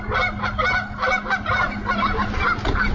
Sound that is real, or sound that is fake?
real